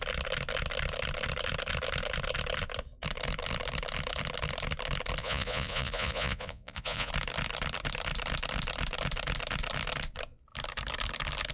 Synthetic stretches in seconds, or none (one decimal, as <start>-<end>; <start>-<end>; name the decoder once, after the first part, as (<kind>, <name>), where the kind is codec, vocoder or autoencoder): 5.2-7.1 (vocoder, Vocos)